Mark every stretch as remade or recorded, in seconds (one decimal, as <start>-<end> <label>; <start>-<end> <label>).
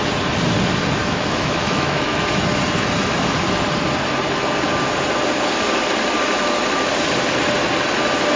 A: 0.0-1.0 recorded; 1.0-2.4 remade; 2.4-8.4 recorded